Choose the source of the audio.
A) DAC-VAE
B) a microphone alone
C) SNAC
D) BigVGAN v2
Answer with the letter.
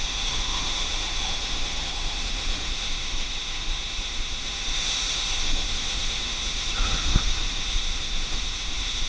A